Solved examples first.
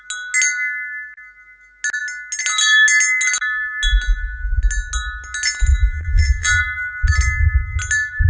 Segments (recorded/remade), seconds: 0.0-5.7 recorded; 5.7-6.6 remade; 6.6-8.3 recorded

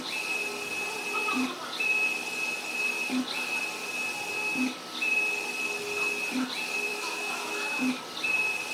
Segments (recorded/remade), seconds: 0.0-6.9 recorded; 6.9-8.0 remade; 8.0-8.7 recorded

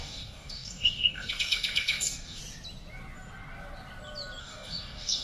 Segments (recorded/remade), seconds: 0.0-2.4 remade; 2.4-4.4 recorded; 4.4-5.2 remade